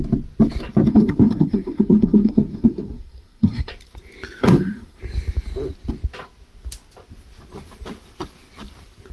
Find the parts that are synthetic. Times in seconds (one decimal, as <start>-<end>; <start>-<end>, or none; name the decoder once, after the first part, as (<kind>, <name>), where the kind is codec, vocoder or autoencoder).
0.9-3.7 (codec, SNAC); 4.4-5.0